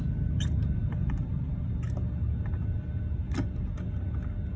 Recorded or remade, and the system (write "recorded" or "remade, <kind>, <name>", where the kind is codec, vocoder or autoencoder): recorded